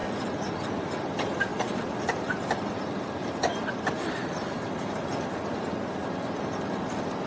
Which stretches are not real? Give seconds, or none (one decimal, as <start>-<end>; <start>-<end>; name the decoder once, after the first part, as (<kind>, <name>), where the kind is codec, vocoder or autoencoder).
0.0-7.3 (vocoder, BigVGAN v2)